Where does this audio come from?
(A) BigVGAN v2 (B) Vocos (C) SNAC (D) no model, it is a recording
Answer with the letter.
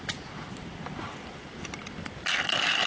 D